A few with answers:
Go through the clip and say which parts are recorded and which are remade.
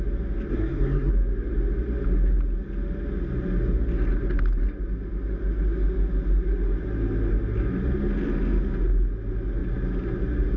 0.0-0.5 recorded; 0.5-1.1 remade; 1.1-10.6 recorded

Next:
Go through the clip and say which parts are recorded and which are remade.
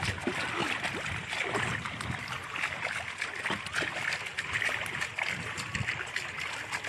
0.0-6.9 recorded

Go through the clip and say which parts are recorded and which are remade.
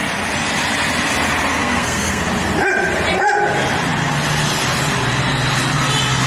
0.0-1.6 recorded; 1.6-2.2 remade; 2.2-6.3 recorded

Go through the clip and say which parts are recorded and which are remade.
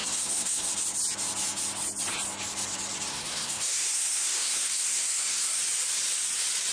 0.0-0.7 remade; 0.7-3.1 recorded; 3.1-5.6 remade; 5.6-6.7 recorded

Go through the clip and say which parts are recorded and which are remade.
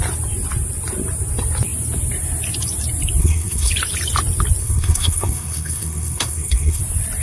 0.0-3.2 recorded; 3.2-3.7 remade; 3.7-4.6 recorded; 4.6-6.8 remade; 6.8-7.2 recorded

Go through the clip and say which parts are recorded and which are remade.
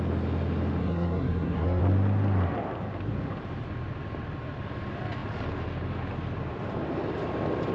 0.0-0.8 recorded; 0.8-1.8 remade; 1.8-7.7 recorded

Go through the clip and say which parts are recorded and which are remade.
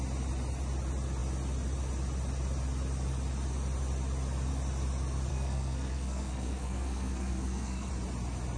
0.0-5.3 recorded; 5.3-7.9 remade; 7.9-8.6 recorded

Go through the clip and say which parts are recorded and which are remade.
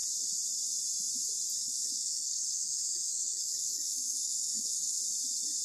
0.0-1.6 recorded; 1.6-5.0 remade; 5.0-5.6 recorded